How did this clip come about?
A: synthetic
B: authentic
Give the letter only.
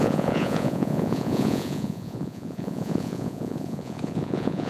A